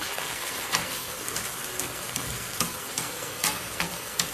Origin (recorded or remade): remade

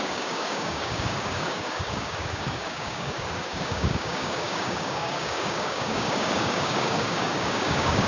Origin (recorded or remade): remade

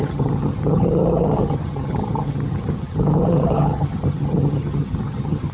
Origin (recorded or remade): remade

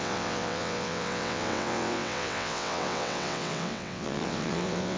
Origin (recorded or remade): remade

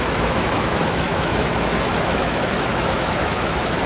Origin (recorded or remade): remade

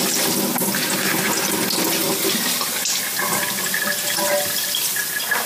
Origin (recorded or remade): recorded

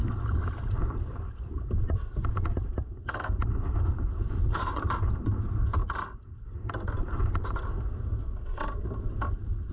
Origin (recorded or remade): recorded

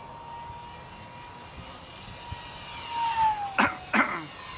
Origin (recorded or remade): recorded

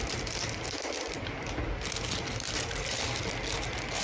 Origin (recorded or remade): recorded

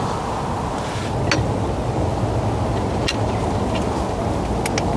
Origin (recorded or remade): recorded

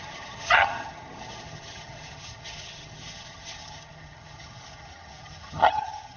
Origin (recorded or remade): remade